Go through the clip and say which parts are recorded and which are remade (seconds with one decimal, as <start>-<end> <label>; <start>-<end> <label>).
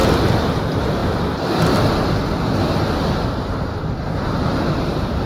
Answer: 0.0-0.6 recorded; 0.6-1.0 remade; 1.0-3.4 recorded; 3.4-5.3 remade